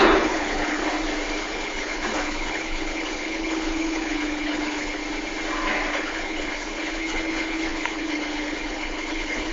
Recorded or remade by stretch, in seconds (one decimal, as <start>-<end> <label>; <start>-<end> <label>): 0.0-0.8 remade; 0.8-1.4 recorded; 1.4-5.0 remade; 5.0-5.9 recorded; 5.9-9.5 remade